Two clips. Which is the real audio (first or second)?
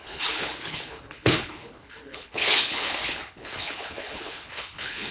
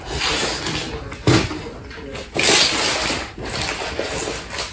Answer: second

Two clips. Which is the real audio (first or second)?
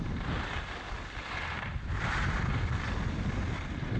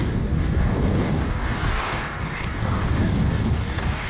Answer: first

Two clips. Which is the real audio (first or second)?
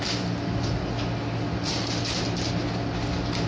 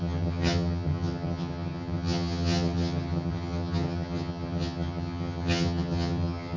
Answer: first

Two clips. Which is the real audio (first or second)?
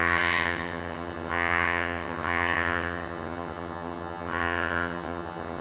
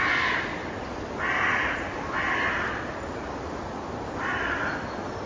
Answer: second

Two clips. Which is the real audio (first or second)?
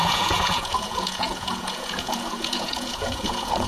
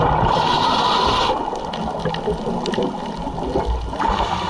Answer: second